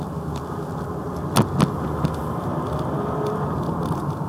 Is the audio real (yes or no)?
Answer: yes